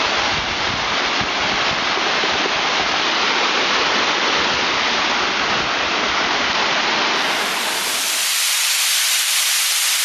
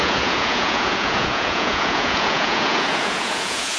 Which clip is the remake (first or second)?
second